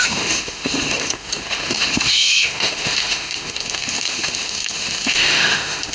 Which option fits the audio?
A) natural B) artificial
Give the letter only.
B